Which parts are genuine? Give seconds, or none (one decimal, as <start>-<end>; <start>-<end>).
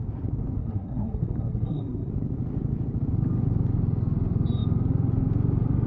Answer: 0.0-0.6; 2.1-5.9